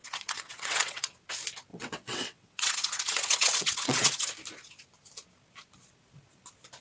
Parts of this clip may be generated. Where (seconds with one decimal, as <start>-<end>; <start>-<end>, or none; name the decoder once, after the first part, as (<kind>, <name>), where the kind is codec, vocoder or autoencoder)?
0.0-1.1 (vocoder, WaveNeXt); 1.7-4.3